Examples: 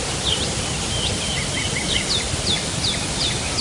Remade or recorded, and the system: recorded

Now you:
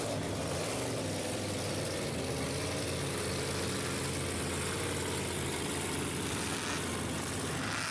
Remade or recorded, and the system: recorded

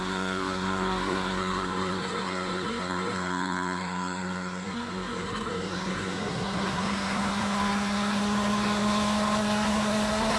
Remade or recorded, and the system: remade, codec, SNAC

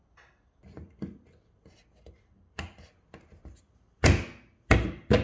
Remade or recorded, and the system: recorded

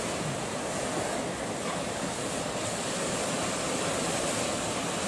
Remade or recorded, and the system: recorded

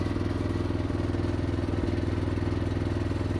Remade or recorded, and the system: recorded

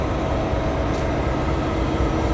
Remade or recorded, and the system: recorded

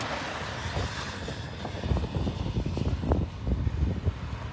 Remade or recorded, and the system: recorded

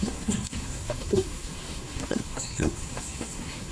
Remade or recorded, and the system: remade, codec, SNAC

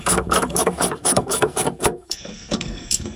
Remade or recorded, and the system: remade, codec, SNAC